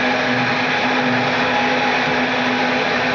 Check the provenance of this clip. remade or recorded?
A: recorded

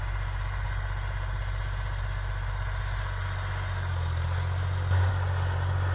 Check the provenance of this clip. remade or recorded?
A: recorded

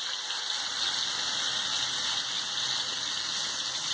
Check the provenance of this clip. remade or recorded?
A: recorded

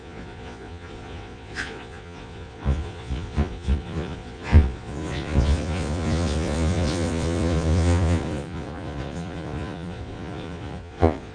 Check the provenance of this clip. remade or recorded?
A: remade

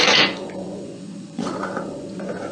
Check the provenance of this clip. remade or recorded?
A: remade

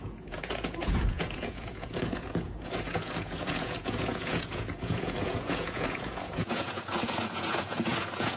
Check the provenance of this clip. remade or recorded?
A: remade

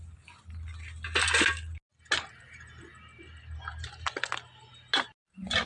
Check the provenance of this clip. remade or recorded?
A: recorded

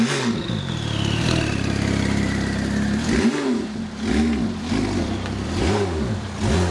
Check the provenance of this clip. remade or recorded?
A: recorded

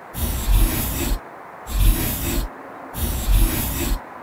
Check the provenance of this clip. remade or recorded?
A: recorded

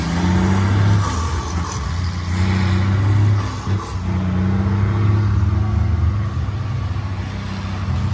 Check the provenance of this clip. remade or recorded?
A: recorded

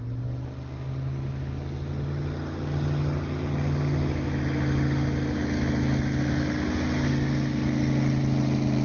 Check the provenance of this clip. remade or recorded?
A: recorded